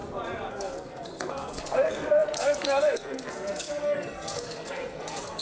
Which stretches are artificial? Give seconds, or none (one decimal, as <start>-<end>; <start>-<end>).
0.5-5.4